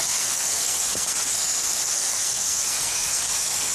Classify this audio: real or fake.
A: fake